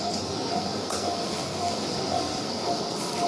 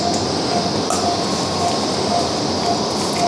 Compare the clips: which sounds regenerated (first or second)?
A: first